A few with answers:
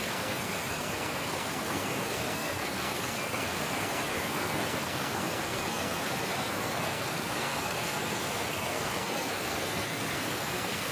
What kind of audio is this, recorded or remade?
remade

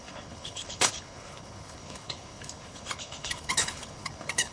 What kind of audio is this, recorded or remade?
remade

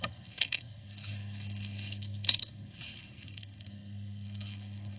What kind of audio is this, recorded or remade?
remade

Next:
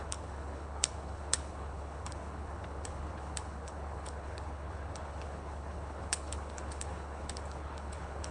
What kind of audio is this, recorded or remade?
remade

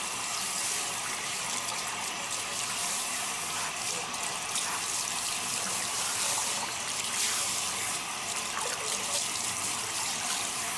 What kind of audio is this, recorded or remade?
remade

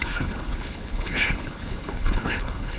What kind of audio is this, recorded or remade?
remade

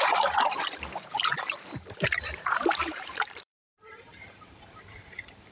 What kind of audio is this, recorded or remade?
remade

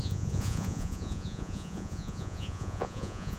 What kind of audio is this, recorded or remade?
remade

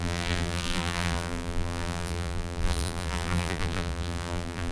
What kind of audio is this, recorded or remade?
remade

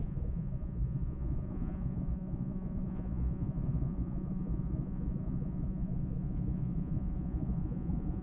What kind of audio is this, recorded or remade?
remade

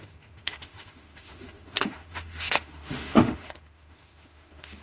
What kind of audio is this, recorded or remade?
remade